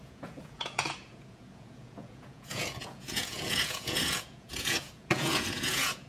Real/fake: fake